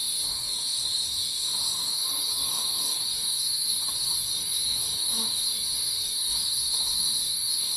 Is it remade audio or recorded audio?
remade